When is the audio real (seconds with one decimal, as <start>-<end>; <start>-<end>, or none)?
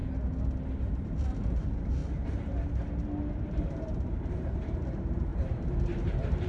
0.0-0.8; 2.0-3.3